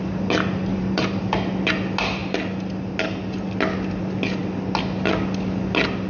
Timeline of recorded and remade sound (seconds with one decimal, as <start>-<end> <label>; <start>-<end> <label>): 0.0-0.7 recorded; 0.7-1.2 remade; 1.2-6.1 recorded